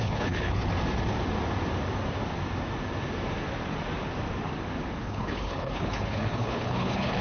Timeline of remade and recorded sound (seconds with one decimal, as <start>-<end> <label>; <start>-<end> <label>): 0.0-0.7 remade; 0.7-5.0 recorded; 5.0-7.2 remade